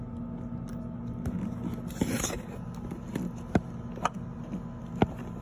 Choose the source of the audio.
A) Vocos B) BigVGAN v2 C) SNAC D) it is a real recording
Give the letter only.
D